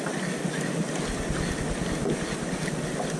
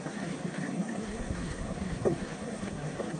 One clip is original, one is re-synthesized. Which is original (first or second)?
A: first